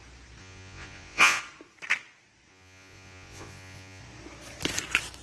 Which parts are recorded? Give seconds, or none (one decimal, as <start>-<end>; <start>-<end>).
0.0-0.4; 1.4-2.5; 4.0-5.2